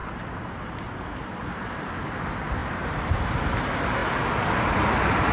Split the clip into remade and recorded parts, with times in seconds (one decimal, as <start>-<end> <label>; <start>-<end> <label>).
0.0-2.0 remade; 2.0-2.6 recorded; 2.6-3.3 remade; 3.3-5.3 recorded